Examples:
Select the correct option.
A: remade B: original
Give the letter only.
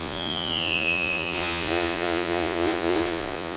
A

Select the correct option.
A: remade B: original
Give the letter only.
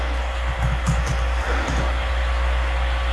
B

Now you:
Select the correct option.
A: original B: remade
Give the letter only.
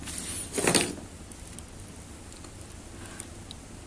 A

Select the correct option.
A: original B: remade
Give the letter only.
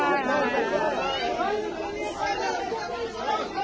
A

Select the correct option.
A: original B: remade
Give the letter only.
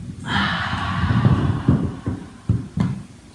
A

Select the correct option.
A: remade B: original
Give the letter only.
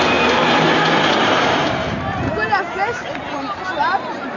A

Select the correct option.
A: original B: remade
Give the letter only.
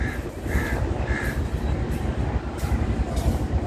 A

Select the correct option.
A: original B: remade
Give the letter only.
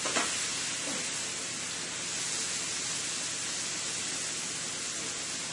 A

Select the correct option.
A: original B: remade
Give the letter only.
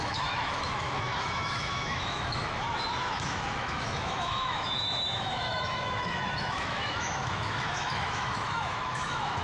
B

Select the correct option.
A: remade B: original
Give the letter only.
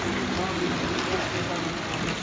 B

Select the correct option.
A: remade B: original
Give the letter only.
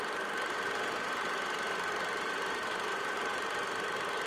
A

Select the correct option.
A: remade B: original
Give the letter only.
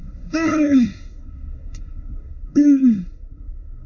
A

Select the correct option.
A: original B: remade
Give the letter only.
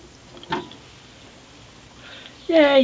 A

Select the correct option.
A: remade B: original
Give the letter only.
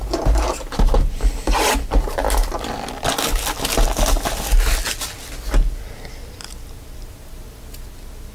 B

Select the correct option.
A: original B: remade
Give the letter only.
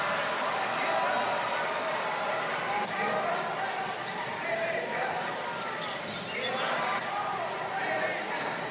A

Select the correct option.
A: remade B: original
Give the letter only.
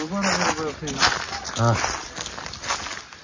B